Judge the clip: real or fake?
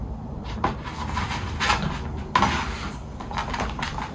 real